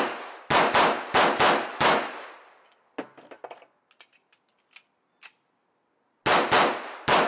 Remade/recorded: recorded